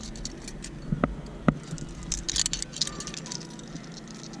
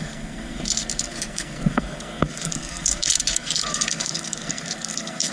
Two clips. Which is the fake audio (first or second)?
second